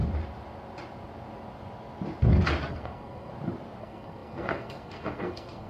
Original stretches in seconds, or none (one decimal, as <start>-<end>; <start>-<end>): 0.0-2.7; 3.3-3.8